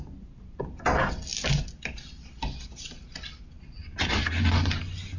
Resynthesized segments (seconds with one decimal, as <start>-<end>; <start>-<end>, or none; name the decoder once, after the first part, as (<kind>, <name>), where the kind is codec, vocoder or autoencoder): none